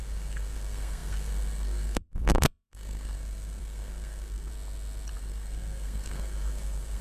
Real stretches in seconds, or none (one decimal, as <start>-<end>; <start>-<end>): 4.5-5.2